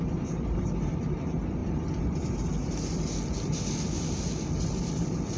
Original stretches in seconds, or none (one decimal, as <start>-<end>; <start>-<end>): 0.0-5.4